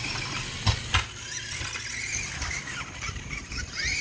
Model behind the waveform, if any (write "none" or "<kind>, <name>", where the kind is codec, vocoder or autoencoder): none